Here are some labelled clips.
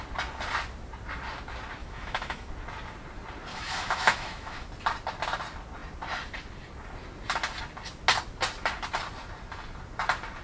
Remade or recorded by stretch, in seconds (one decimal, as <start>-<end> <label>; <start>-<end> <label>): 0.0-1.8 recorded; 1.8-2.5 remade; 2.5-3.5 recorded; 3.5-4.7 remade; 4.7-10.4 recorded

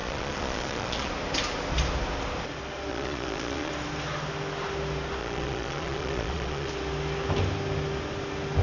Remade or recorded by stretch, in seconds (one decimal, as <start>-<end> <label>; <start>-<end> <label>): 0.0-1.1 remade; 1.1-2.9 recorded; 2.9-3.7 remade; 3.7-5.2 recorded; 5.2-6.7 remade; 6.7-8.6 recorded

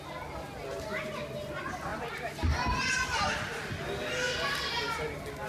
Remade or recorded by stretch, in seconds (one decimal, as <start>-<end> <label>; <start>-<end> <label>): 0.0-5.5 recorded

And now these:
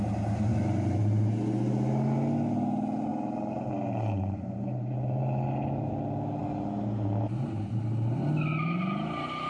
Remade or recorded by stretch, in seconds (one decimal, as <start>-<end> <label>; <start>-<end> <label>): 0.0-0.5 recorded; 0.5-1.0 remade; 1.0-3.1 recorded; 3.1-5.9 remade; 5.9-9.5 recorded